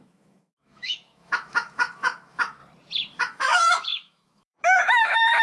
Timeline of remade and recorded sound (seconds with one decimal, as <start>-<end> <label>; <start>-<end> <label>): 0.0-2.6 remade; 2.6-3.2 recorded; 3.2-5.4 remade